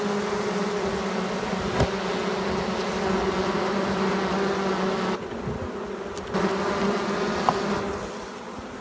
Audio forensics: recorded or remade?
recorded